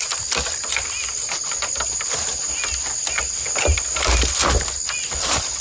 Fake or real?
real